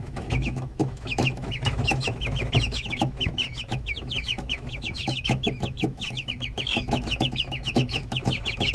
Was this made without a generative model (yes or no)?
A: no